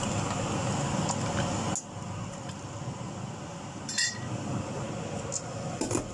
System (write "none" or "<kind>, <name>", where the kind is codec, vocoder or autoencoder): none